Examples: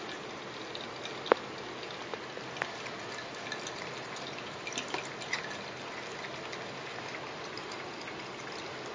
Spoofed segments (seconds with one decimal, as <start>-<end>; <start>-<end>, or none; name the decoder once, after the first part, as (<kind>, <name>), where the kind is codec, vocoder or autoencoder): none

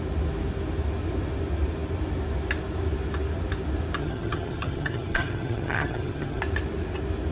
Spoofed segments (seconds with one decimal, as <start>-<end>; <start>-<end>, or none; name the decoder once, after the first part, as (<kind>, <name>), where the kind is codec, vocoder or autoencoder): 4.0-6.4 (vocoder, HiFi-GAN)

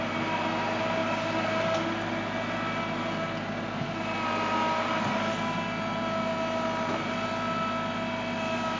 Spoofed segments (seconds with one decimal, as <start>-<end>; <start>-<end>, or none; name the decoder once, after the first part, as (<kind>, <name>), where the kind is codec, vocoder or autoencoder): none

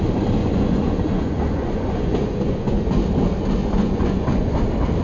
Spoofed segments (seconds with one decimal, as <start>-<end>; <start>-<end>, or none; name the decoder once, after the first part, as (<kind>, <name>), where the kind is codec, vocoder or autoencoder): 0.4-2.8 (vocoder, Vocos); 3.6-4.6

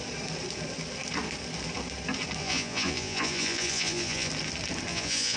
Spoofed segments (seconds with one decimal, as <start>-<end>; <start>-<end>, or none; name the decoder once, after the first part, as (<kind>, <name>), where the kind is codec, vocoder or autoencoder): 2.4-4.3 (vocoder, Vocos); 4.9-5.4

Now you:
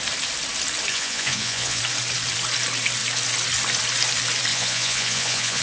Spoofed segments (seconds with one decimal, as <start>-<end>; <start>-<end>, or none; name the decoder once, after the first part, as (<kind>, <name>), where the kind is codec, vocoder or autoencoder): 0.9-1.8 (vocoder, Vocos); 4.5-5.6

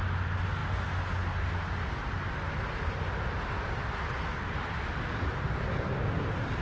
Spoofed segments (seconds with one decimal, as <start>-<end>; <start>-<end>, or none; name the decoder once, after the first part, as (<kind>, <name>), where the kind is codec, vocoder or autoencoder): none

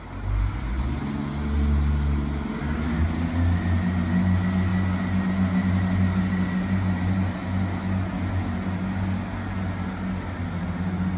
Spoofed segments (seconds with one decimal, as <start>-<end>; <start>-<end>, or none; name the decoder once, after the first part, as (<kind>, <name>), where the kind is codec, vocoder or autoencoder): none